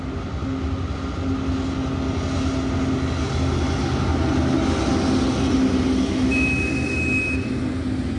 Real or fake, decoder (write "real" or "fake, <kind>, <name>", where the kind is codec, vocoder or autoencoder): real